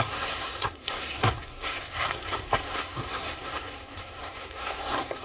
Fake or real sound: fake